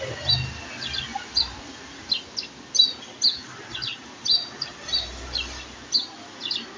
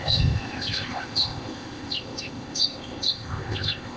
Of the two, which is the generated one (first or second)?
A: second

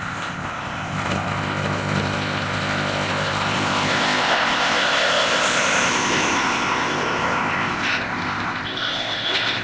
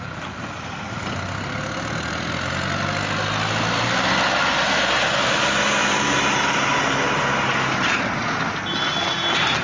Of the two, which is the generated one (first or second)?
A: first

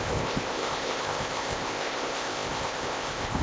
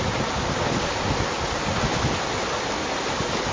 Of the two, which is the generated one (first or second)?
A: first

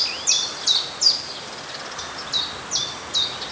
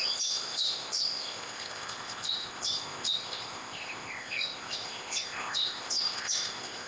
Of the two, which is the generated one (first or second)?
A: second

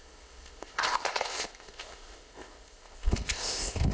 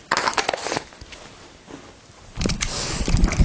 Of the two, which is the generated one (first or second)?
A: first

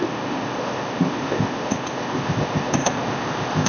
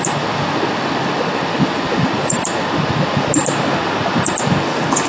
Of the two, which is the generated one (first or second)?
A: first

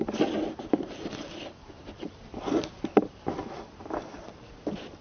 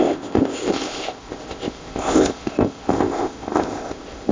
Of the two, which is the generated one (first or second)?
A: second